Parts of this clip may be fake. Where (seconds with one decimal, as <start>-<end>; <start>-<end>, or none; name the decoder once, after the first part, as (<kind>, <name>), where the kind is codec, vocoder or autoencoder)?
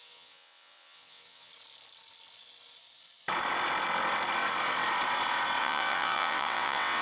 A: 0.0-1.5 (vocoder, WaveNeXt); 5.6-7.0